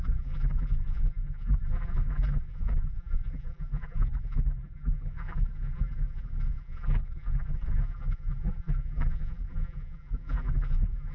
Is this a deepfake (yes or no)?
yes